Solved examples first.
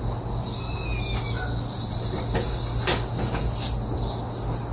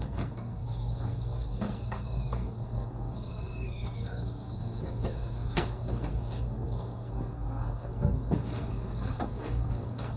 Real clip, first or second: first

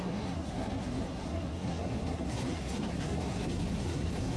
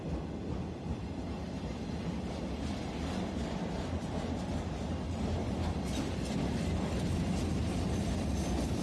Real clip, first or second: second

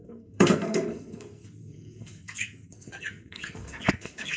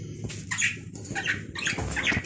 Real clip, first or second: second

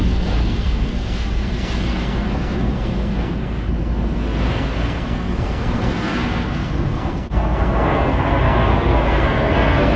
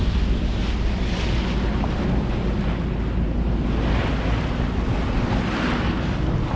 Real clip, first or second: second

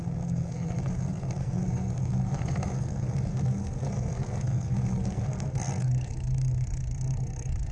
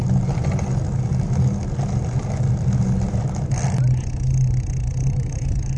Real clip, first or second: second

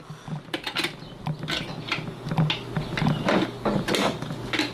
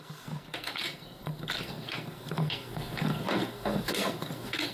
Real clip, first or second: first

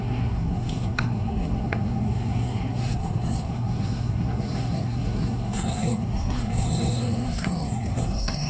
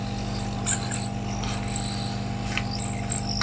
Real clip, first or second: second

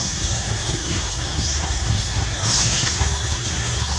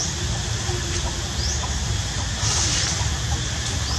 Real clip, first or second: second